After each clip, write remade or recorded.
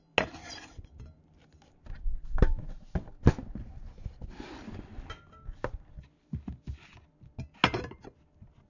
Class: recorded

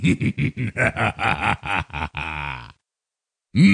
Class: recorded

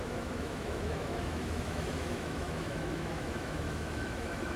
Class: remade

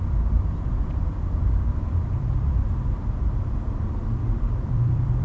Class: remade